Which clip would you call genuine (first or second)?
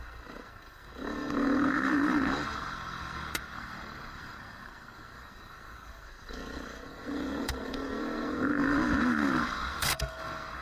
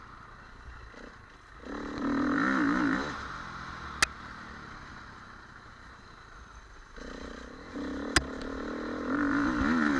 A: second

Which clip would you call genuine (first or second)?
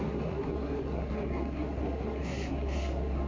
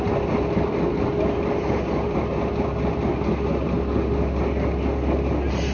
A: second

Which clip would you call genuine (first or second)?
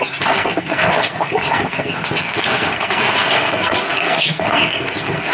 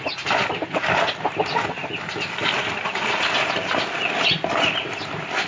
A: second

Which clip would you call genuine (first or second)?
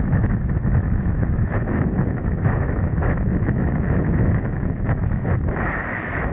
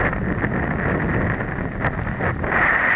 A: second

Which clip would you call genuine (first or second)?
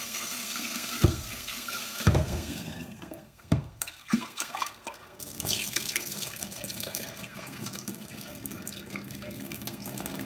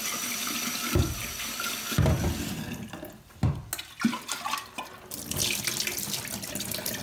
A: second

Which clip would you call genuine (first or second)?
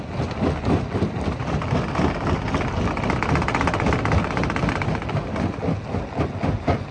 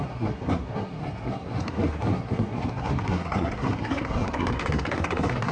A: first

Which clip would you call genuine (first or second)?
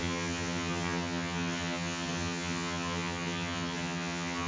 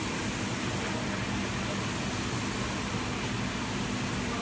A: second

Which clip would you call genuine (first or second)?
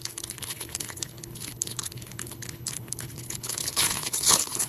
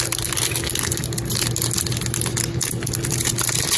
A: second